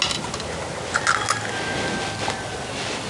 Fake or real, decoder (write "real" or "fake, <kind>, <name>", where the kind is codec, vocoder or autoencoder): real